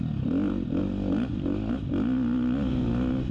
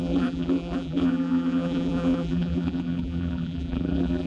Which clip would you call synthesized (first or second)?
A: second